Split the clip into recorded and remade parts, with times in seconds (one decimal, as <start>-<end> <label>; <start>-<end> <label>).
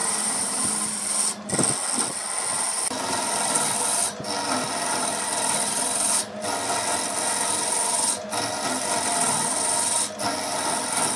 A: 0.0-0.7 remade; 0.7-11.2 recorded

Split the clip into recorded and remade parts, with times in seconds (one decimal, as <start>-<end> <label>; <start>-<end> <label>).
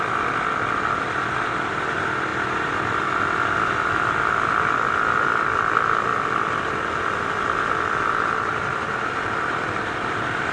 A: 0.0-10.5 recorded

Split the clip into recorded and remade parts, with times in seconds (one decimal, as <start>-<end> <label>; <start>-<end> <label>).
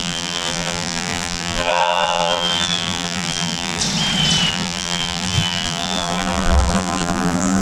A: 0.0-3.8 remade; 3.8-4.5 recorded; 4.5-7.6 remade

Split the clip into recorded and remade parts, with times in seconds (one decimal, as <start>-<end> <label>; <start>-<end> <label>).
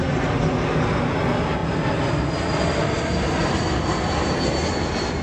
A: 0.0-5.2 recorded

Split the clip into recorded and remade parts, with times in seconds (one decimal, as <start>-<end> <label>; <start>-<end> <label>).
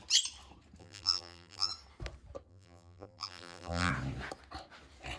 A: 0.0-0.8 recorded; 0.8-1.7 remade; 1.7-2.5 recorded; 2.5-3.9 remade; 3.9-5.2 recorded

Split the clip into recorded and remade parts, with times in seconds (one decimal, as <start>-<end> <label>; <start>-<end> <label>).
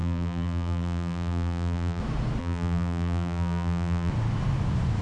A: 0.0-2.0 remade; 2.0-2.4 recorded; 2.4-4.1 remade; 4.1-5.0 recorded